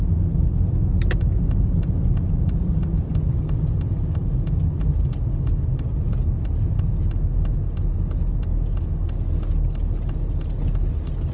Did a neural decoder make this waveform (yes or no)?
no